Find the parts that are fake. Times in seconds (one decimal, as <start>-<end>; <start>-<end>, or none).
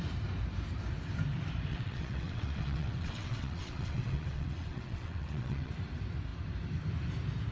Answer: 1.7-5.7